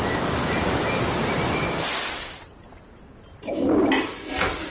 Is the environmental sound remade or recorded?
recorded